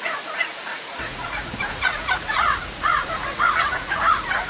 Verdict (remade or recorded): remade